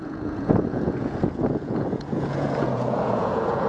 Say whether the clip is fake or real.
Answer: fake